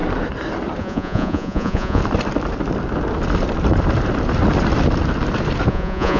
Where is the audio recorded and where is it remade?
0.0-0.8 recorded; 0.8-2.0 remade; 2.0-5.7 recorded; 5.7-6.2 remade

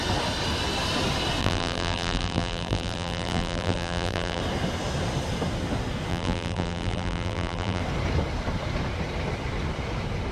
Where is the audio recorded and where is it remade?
0.0-1.4 recorded; 1.4-4.4 remade; 4.4-6.1 recorded; 6.1-7.8 remade; 7.8-10.3 recorded